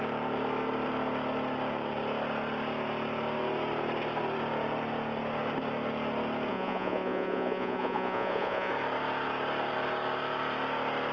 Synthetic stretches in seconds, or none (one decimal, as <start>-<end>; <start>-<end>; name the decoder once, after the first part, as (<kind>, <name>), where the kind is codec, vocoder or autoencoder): 6.5-8.7 (vocoder, Vocos)